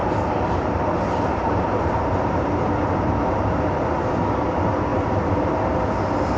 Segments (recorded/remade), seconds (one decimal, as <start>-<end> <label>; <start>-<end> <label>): 0.0-3.4 remade; 3.4-4.9 recorded; 4.9-5.5 remade; 5.5-6.4 recorded